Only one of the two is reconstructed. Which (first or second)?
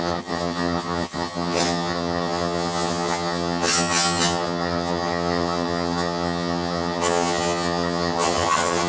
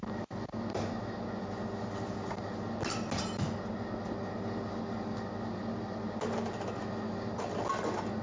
first